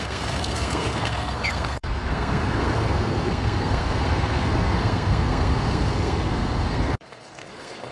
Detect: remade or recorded remade